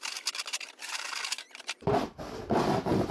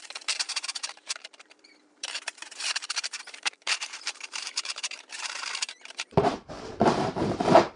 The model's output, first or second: second